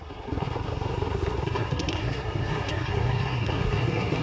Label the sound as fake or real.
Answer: fake